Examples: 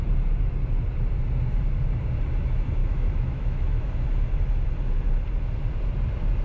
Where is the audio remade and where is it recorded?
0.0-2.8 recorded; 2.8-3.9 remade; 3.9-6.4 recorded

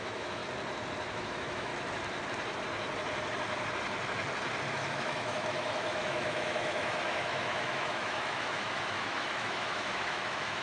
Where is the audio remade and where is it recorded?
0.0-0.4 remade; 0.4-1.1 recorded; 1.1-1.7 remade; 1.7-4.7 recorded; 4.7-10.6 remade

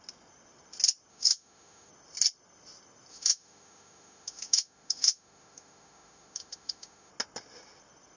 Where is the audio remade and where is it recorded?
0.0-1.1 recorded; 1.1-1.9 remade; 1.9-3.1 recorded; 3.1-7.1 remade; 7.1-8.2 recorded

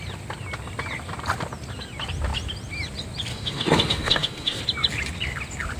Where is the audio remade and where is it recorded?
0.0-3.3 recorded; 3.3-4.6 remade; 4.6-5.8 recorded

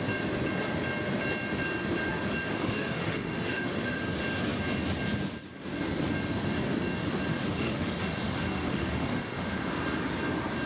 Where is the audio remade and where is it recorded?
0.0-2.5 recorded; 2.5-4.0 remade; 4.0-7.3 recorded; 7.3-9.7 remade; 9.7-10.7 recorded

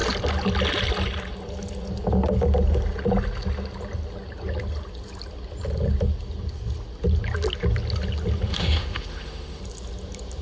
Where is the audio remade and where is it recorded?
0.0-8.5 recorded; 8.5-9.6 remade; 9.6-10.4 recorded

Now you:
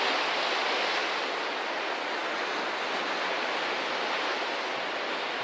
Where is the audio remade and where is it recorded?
0.0-5.4 recorded